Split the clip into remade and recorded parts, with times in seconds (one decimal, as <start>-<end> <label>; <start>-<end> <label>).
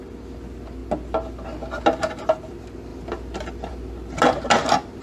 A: 0.0-5.0 recorded